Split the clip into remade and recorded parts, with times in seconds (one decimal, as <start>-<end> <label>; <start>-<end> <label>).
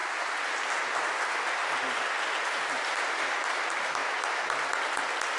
0.0-5.4 recorded